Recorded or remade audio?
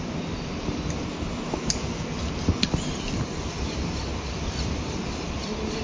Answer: recorded